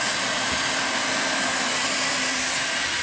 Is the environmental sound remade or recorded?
recorded